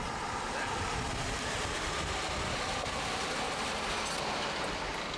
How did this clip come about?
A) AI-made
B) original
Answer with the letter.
B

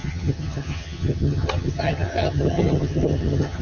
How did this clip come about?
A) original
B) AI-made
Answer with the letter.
B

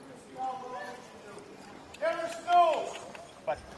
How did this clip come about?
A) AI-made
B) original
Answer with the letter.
B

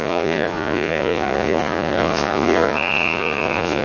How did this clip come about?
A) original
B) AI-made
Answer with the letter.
B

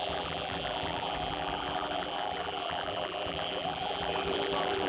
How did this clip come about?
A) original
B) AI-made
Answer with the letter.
B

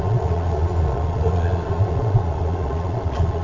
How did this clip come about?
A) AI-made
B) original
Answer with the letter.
A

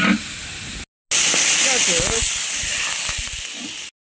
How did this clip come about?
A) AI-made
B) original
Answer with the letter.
B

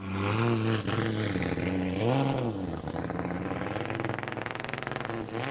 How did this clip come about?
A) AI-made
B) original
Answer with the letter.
B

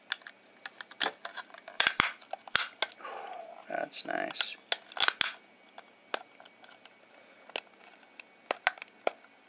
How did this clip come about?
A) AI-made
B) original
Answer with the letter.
B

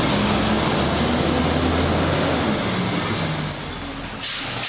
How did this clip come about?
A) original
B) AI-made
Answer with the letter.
A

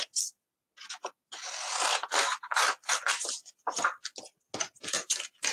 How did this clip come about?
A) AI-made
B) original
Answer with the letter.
B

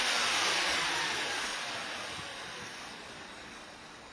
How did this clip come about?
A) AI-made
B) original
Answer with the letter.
B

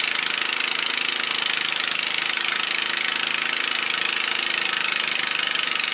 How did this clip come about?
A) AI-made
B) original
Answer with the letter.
B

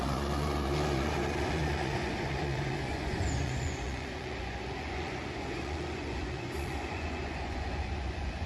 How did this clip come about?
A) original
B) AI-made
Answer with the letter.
B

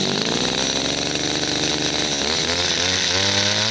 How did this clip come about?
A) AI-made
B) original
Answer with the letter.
B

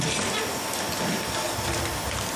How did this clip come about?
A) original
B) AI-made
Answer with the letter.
A